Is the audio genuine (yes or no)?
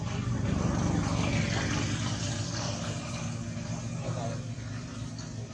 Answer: yes